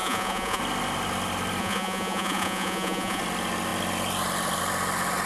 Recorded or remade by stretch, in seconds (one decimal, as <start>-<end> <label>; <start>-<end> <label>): 0.0-0.6 remade; 0.6-1.6 recorded; 1.6-3.2 remade; 3.2-5.3 recorded